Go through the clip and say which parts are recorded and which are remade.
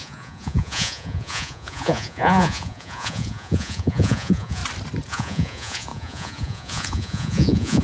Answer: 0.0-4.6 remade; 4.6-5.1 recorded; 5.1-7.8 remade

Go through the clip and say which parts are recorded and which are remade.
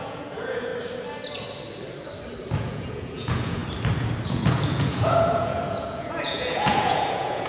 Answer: 0.0-0.7 remade; 0.7-2.6 recorded; 2.6-3.6 remade; 3.6-4.3 recorded; 4.3-7.5 remade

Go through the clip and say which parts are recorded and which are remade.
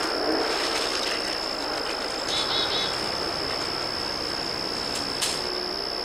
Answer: 0.0-6.0 recorded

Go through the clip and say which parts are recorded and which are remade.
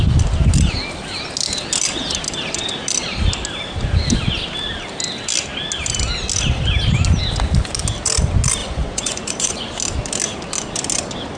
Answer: 0.0-8.6 recorded; 8.6-9.7 remade; 9.7-11.4 recorded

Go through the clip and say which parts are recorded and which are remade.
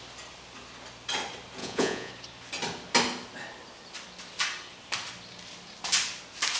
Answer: 0.0-1.6 recorded; 1.6-2.1 remade; 2.1-6.6 recorded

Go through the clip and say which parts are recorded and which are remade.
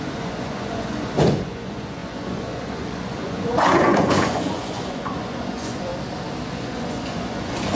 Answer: 0.0-5.9 remade; 5.9-6.5 recorded; 6.5-7.8 remade